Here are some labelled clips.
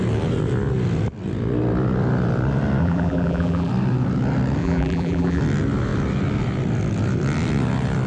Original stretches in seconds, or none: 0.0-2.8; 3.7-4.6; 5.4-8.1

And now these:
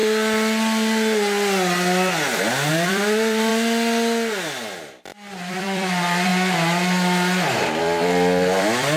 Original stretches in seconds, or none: 0.0-2.7; 3.5-5.5; 6.3-7.8

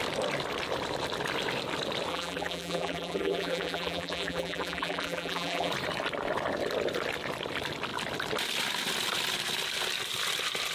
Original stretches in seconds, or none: 0.0-2.1; 5.7-10.7